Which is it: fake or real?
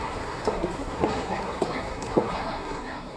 fake